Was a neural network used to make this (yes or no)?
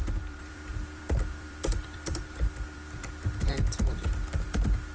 yes